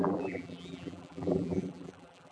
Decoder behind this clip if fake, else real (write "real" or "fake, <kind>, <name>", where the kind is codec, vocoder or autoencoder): fake, vocoder, BigVGAN v2